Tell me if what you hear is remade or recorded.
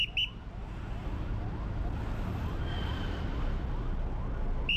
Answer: recorded